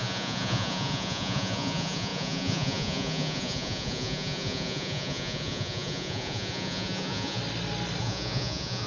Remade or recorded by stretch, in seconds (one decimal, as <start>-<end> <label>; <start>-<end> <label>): 0.0-7.4 remade; 7.4-8.0 recorded; 8.0-8.9 remade